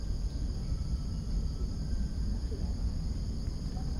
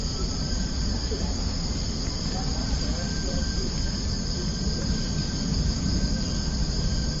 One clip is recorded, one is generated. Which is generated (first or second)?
second